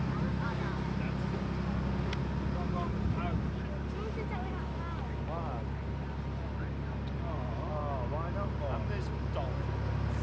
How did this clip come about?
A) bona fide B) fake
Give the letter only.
A